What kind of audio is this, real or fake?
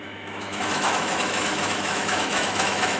fake